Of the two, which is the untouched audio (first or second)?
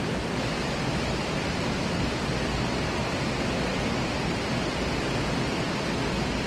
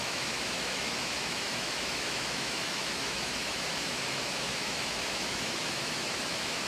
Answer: first